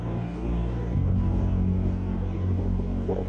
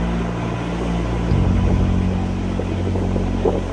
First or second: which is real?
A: second